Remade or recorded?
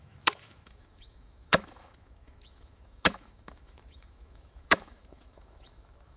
remade